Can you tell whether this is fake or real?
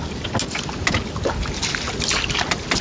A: real